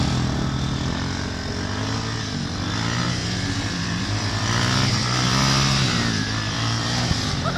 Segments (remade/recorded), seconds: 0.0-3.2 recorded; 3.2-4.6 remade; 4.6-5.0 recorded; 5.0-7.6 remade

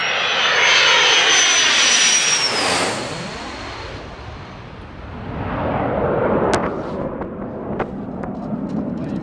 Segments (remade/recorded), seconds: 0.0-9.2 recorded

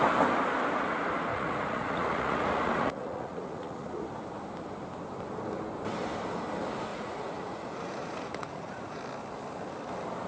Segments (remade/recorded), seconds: 0.0-1.3 recorded; 1.3-4.0 remade; 4.0-6.9 recorded; 6.9-9.0 remade; 9.0-10.3 recorded

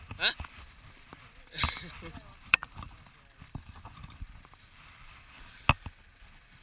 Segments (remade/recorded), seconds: 0.0-1.1 recorded; 1.1-5.1 remade; 5.1-6.6 recorded

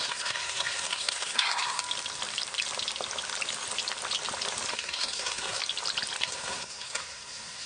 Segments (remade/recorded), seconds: 0.0-1.8 remade; 1.8-4.7 recorded; 4.7-5.6 remade; 5.6-6.2 recorded; 6.2-7.7 remade